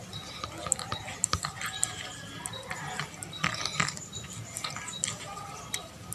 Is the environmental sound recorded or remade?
remade